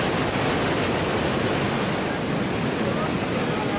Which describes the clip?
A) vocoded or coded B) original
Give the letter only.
B